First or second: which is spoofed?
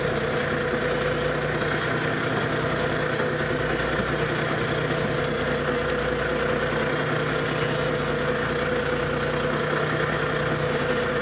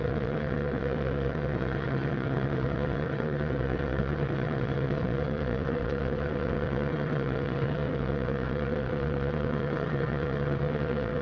second